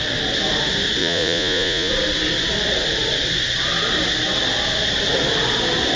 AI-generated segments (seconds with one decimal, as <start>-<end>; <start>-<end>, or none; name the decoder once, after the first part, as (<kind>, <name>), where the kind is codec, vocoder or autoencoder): 1.0-1.9 (vocoder, Vocos)

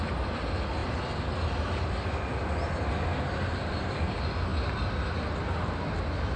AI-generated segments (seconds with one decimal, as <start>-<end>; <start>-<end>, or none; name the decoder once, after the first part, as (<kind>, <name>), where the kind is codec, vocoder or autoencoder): none

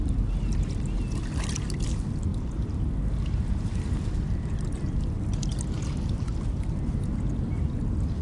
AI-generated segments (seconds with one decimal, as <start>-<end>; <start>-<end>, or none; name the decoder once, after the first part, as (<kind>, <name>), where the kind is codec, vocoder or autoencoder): none

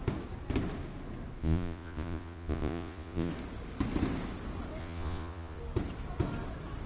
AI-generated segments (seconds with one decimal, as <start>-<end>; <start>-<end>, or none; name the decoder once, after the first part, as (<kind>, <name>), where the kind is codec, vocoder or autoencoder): 1.4-3.3 (vocoder, Vocos); 4.8-5.6